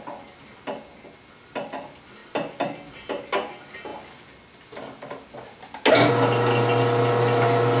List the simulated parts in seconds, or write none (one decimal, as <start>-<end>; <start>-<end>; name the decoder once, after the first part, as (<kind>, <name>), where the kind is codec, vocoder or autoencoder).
none